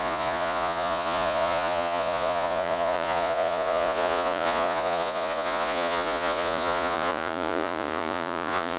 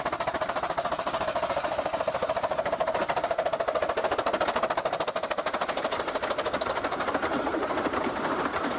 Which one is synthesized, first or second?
first